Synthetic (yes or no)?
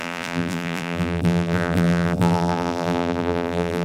yes